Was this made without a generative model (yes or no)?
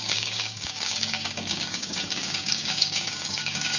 no